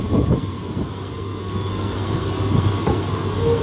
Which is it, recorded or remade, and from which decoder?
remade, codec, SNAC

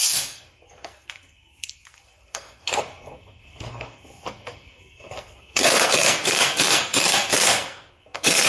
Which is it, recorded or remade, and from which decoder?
remade, codec, SNAC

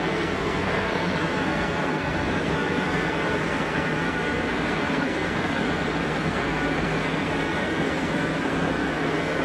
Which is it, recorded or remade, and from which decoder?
remade, codec, SNAC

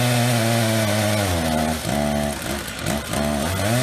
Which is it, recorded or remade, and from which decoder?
recorded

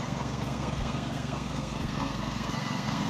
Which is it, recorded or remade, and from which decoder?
remade, codec, SNAC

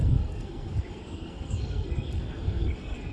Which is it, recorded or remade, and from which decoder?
remade, codec, SNAC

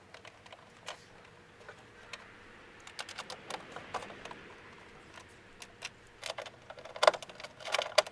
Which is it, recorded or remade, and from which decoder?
recorded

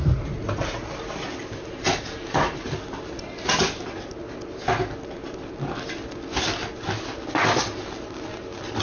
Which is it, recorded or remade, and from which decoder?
recorded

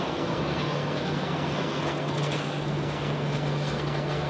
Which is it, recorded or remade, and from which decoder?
remade, codec, SNAC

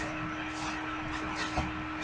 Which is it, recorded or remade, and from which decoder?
recorded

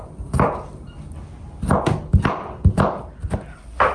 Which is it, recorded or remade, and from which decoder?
recorded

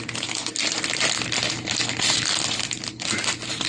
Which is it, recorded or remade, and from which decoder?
recorded